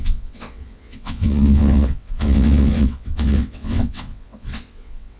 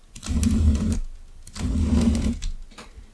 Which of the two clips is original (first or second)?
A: second